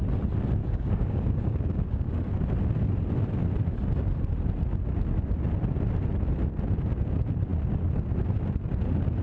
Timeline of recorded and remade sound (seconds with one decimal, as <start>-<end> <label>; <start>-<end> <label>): 0.0-0.6 recorded; 0.6-2.2 remade; 2.2-9.2 recorded